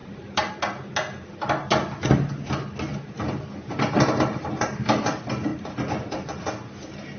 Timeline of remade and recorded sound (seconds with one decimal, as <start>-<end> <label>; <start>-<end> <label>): 0.0-0.5 remade; 0.5-2.9 recorded; 2.9-5.0 remade; 5.0-5.5 recorded; 5.5-6.5 remade; 6.5-7.2 recorded